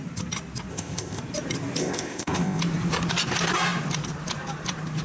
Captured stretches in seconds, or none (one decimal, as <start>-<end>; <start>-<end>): 0.0-0.7; 1.2-1.8; 2.6-5.0